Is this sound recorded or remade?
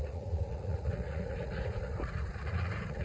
remade